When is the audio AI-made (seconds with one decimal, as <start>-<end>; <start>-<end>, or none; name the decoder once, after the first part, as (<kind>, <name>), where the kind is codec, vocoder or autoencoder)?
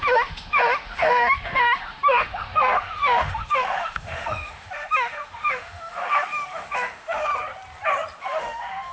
0.0-7.3 (autoencoder, DAC-VAE); 8.2-8.9